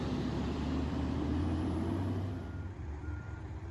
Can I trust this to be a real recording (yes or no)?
no